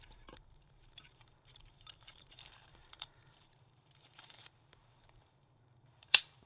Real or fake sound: fake